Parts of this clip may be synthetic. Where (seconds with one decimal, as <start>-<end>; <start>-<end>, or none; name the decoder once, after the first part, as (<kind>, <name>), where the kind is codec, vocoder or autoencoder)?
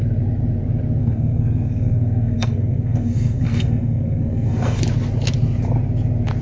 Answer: 1.0-4.8 (codec, SNAC)